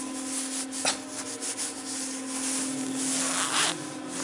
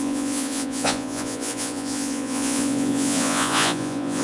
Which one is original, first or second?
first